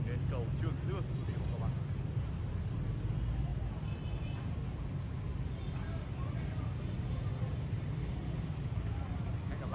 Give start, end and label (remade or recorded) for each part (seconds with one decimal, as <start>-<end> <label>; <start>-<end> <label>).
0.0-9.7 recorded